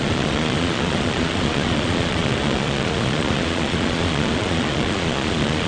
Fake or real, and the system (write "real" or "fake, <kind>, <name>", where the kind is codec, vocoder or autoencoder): fake, vocoder, Vocos